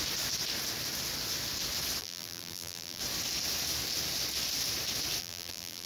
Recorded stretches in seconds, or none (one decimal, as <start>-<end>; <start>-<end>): 0.0-2.0; 3.0-5.2